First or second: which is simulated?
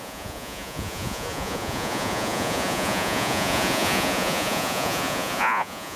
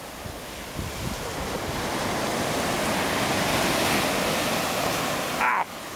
first